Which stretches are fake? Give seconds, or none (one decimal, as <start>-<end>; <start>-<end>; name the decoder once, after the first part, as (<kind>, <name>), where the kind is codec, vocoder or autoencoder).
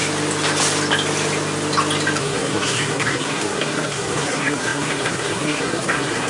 2.2-6.3 (codec, SNAC)